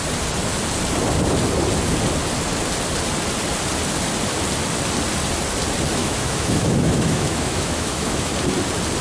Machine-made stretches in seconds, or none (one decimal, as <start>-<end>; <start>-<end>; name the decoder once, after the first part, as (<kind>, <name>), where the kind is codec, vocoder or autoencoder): 6.0-8.3 (autoencoder, DAC-VAE)